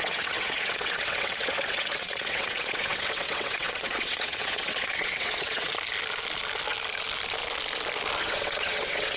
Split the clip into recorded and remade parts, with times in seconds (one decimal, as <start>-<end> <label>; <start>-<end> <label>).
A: 0.0-5.7 remade; 5.7-8.2 recorded; 8.2-9.2 remade